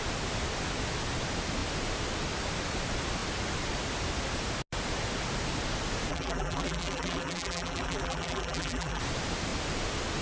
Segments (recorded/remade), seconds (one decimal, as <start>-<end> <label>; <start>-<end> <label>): 0.0-6.1 recorded; 6.1-9.0 remade; 9.0-10.2 recorded